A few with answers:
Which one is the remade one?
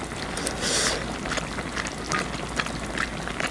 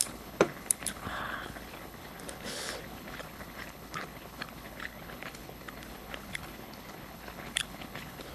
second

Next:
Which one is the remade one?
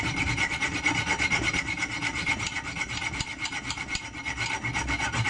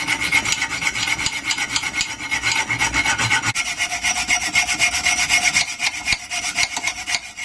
first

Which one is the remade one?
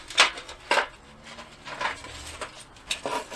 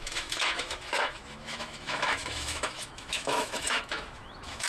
second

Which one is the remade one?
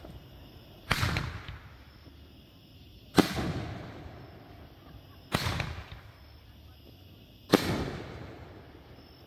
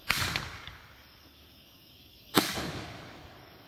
second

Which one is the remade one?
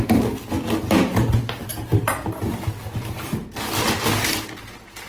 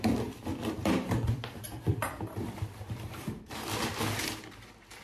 second